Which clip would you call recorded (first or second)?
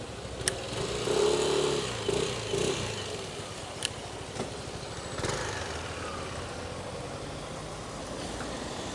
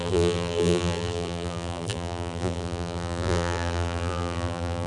first